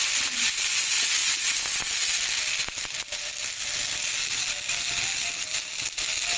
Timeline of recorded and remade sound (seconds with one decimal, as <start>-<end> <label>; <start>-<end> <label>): 0.0-0.5 remade; 0.5-6.4 recorded